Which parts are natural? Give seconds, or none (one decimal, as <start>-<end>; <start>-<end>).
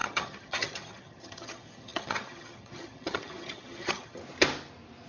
4.2-5.1